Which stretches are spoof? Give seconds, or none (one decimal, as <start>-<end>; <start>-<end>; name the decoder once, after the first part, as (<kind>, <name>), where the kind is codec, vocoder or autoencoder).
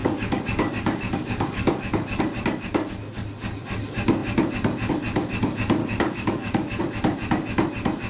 0.0-2.2 (codec, DAC); 5.8-6.8